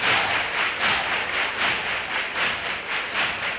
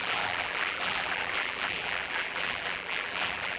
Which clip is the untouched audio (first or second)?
first